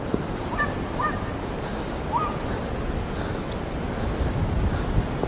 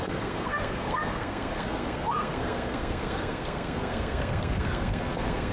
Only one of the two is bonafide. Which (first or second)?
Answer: first